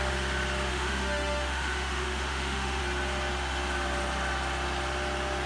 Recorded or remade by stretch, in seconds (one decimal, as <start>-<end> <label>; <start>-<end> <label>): 0.0-0.7 recorded; 0.7-2.8 remade; 2.8-5.5 recorded